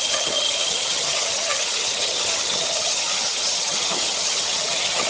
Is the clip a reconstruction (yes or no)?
yes